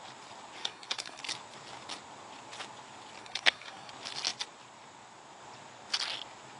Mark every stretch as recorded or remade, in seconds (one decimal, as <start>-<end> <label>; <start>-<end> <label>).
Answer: 0.0-0.6 recorded; 0.6-1.2 remade; 1.2-3.2 recorded; 3.2-3.9 remade; 3.9-6.6 recorded